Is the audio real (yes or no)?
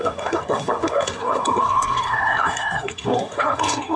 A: no